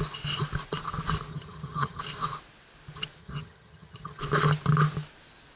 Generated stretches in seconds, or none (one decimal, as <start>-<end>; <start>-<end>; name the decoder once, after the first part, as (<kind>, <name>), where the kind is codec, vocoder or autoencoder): 1.3-2.0 (vocoder, HiFi-GAN); 3.2-4.2